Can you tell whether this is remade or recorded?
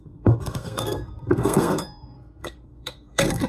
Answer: remade